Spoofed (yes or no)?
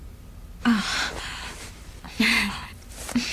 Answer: no